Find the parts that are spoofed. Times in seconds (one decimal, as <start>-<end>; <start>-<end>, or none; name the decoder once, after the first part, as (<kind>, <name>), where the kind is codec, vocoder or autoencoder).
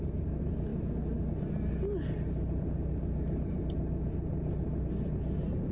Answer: none